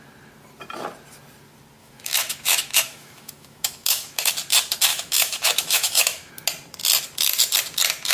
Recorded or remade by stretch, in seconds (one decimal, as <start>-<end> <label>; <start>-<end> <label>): 0.0-1.8 recorded; 1.8-4.3 remade; 4.3-4.9 recorded; 4.9-6.3 remade; 6.3-8.1 recorded